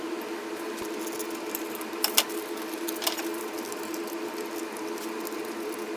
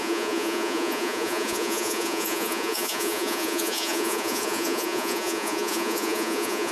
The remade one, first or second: second